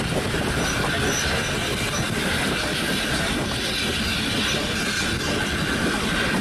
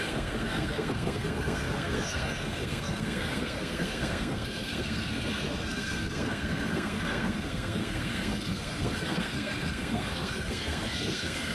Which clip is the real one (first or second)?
first